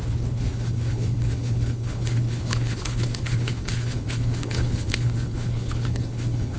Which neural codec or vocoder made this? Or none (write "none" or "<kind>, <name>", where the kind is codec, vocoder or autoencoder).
codec, HILCodec